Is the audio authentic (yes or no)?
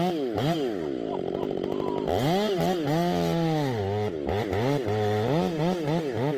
yes